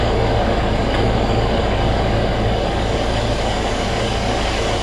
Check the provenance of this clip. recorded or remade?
remade